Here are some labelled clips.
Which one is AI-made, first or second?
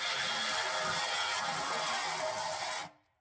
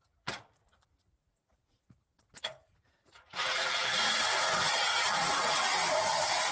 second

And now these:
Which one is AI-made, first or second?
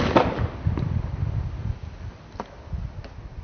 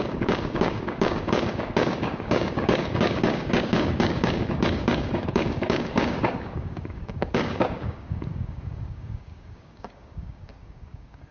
second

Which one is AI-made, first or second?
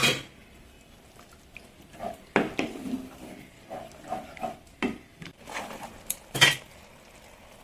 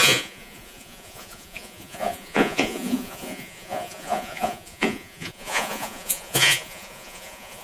second